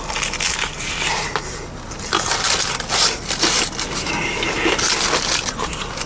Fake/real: real